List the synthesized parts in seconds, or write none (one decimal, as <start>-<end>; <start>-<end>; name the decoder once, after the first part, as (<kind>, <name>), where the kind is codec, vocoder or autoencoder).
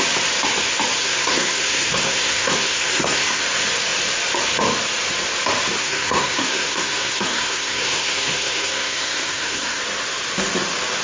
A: 1.0-3.4 (codec, SNAC); 5.8-9.8